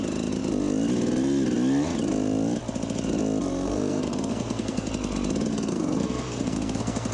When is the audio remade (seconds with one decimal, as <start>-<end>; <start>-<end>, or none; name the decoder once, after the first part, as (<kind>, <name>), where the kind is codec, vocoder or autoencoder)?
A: 3.5-4.9 (codec, SNAC); 5.5-7.1